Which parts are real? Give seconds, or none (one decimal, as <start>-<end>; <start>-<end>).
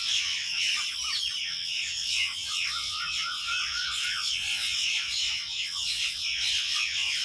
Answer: 0.7-1.4